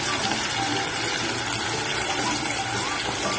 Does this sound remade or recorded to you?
recorded